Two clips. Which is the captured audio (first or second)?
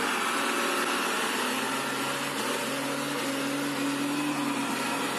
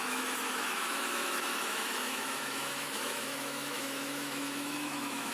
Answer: first